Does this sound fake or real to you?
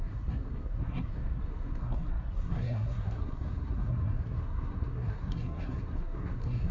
fake